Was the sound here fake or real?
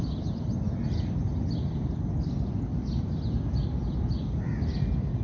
real